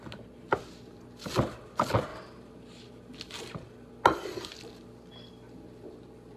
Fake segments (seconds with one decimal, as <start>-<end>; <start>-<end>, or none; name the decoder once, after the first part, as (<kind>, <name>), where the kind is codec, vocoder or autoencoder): none